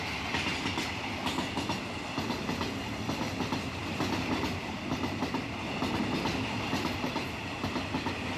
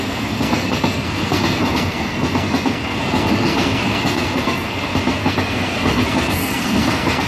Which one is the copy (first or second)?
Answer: second